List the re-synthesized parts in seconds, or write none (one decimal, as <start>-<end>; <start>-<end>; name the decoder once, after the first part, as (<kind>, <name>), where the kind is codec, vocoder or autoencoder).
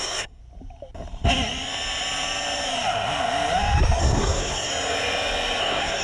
0.0-0.4 (codec, SNAC); 4.0-4.7; 5.6-6.0